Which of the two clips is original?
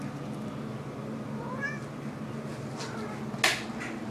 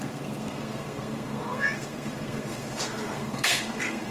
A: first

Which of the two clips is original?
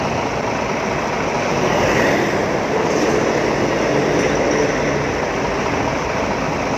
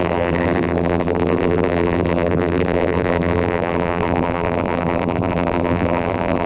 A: first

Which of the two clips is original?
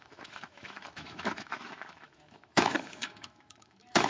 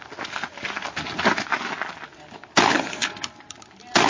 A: second